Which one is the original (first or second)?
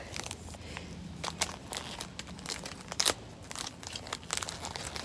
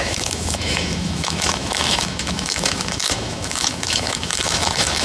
first